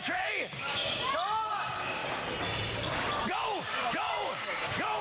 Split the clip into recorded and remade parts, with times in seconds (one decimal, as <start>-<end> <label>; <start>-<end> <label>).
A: 0.0-0.8 remade; 0.8-1.5 recorded; 1.5-2.0 remade; 2.0-3.6 recorded; 3.6-5.0 remade